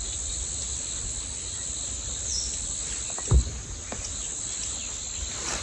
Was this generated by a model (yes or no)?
no